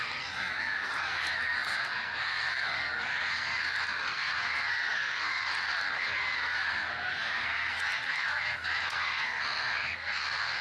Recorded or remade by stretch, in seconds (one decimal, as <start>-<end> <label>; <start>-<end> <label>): 0.0-10.6 remade